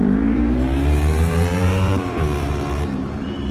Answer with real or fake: fake